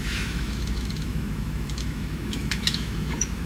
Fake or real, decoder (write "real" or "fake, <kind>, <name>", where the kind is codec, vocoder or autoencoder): fake, autoencoder, DAC-VAE